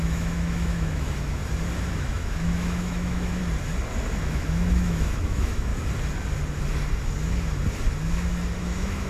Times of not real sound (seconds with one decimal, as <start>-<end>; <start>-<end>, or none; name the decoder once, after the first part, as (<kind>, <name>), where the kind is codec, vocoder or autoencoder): 0.0-1.4 (autoencoder, DAC-VAE); 2.0-3.4; 4.2-5.7; 8.6-9.1